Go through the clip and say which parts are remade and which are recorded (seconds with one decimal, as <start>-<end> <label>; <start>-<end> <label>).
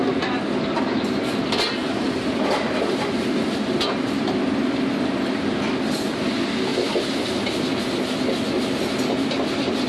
0.0-9.9 recorded